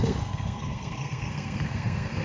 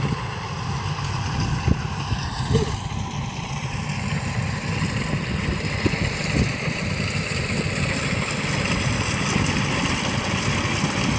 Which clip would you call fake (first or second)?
first